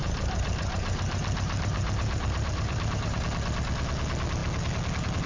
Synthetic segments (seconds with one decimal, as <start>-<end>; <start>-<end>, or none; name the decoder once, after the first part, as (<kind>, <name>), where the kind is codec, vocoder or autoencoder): 0.0-3.2 (vocoder, BigVGAN v2)